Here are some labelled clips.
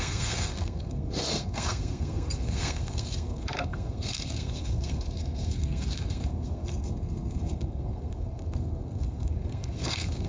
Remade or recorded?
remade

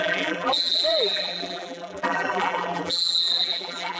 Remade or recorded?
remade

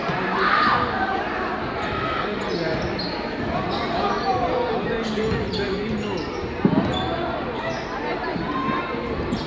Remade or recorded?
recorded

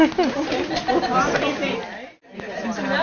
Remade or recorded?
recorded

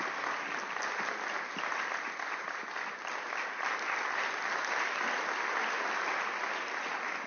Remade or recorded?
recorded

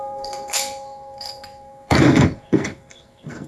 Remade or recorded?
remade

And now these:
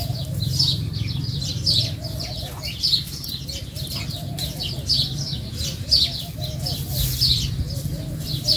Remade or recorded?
recorded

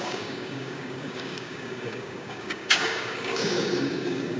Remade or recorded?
remade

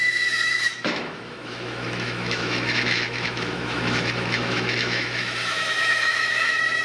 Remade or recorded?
remade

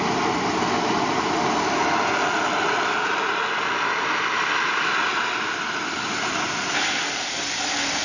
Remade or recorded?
recorded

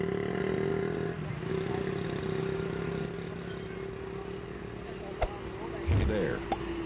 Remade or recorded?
recorded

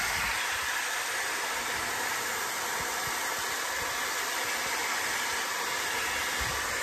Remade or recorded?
recorded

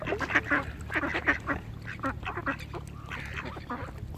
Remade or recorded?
recorded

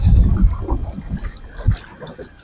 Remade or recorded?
recorded